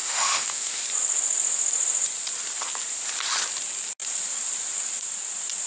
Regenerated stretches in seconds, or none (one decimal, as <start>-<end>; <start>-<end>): 0.0-0.8